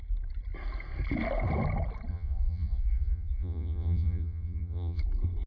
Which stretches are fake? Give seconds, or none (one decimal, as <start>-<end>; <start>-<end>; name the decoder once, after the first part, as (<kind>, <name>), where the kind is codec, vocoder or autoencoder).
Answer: 2.1-5.0 (vocoder, Vocos)